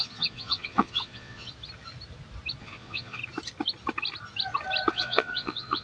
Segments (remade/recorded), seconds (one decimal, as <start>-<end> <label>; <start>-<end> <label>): 0.0-1.5 remade; 1.5-2.6 recorded; 2.6-3.2 remade; 3.2-4.9 recorded; 4.9-5.8 remade